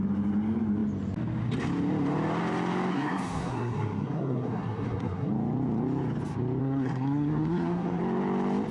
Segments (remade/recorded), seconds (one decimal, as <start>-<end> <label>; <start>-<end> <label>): 0.0-2.9 recorded; 2.9-5.3 remade; 5.3-6.6 recorded; 6.6-8.0 remade; 8.0-8.7 recorded